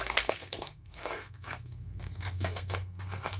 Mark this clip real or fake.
fake